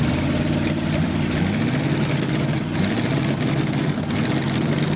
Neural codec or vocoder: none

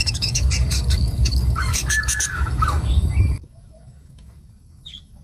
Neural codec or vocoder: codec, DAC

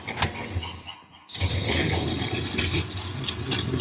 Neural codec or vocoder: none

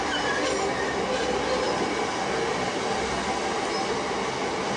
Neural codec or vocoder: none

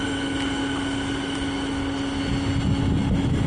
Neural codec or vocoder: none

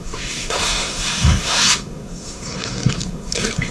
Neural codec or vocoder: codec, SNAC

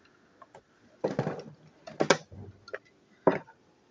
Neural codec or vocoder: none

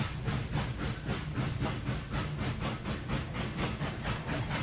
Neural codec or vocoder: none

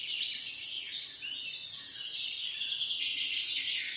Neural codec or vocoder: none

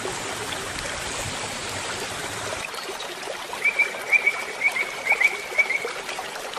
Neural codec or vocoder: vocoder, BigVGAN v2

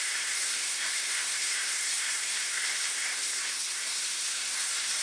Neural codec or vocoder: codec, SNAC